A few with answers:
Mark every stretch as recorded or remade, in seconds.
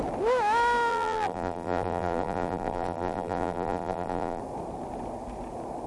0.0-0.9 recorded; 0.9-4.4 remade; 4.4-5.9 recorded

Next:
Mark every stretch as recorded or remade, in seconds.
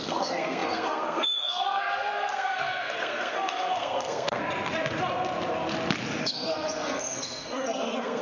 0.0-4.4 remade; 4.4-6.2 recorded; 6.2-8.2 remade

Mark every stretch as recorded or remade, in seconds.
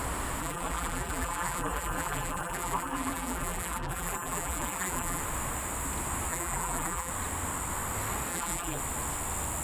0.0-0.4 recorded; 0.4-5.2 remade; 5.2-6.3 recorded; 6.3-7.1 remade; 7.1-8.3 recorded; 8.3-8.8 remade; 8.8-9.6 recorded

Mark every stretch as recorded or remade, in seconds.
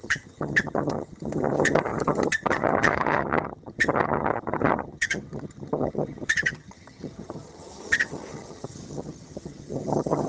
0.0-10.3 remade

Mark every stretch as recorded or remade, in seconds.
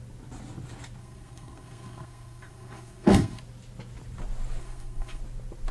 0.0-1.0 recorded; 1.0-3.4 remade; 3.4-4.6 recorded; 4.6-5.2 remade; 5.2-5.7 recorded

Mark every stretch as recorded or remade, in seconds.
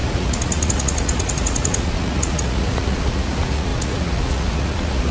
0.0-5.1 remade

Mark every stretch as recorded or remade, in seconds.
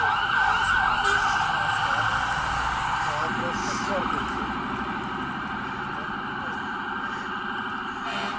0.0-3.6 recorded; 3.6-4.3 remade; 4.3-8.4 recorded